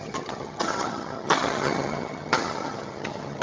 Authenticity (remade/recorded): remade